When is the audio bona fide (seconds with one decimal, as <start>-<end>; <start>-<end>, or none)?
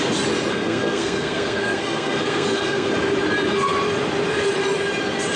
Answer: 0.0-0.5; 2.9-5.4